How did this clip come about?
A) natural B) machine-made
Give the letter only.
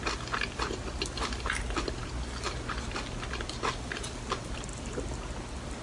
A